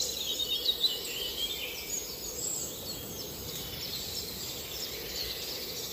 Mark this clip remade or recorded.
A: remade